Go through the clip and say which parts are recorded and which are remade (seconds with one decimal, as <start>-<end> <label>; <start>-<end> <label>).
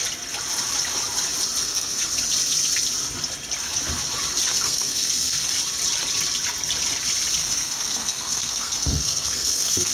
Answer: 0.0-1.6 recorded; 1.6-2.1 remade; 2.1-4.5 recorded; 4.5-5.5 remade; 5.5-7.4 recorded; 7.4-9.9 remade